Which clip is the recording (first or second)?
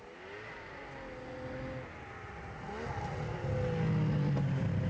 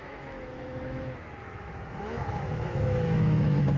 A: first